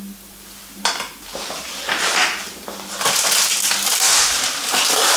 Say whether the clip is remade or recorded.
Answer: recorded